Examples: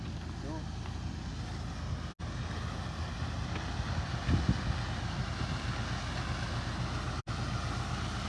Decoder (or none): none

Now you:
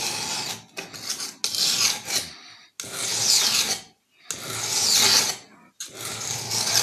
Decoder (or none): none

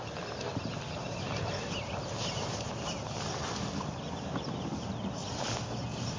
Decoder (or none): none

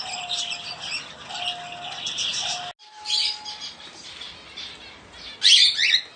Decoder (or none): none